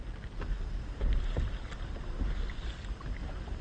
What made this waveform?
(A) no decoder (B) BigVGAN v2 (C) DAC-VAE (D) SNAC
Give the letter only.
A